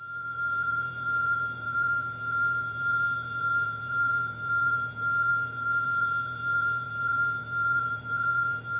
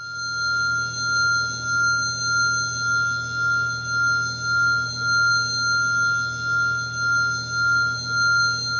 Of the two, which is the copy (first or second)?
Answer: first